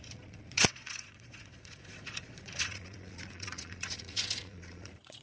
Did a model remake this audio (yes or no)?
yes